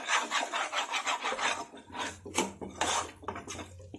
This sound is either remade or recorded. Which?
recorded